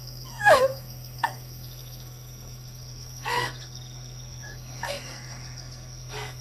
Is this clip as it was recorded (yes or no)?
no